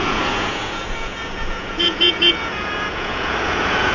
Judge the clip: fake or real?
fake